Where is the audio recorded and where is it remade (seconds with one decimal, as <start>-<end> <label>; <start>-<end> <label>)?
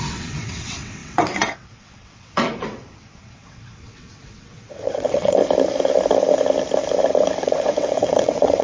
0.0-5.4 remade; 5.4-7.4 recorded; 7.4-8.6 remade